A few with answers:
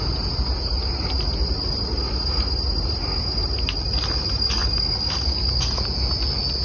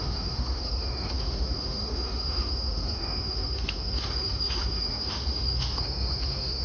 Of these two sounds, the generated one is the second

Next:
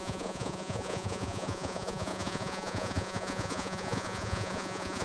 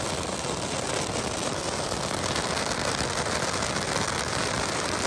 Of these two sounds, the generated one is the first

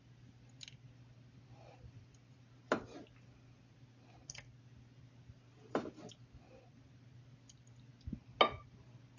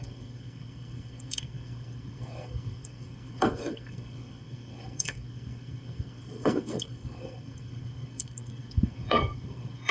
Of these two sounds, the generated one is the second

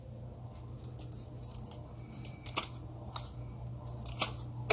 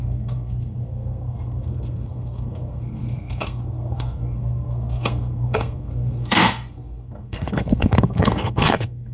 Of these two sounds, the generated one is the second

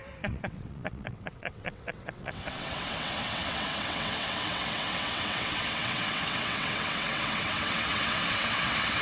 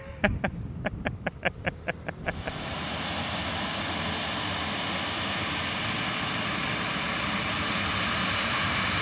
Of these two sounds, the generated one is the first